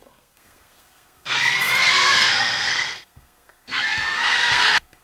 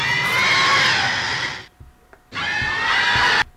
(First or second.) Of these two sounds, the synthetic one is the first